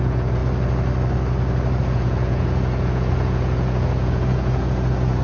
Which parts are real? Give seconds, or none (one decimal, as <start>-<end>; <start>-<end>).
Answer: 0.4-1.8